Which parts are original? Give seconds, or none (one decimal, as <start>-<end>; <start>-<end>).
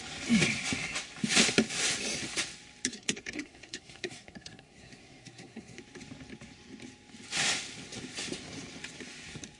0.0-2.9; 5.8-9.6